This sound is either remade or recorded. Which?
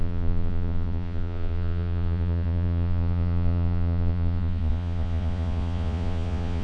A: remade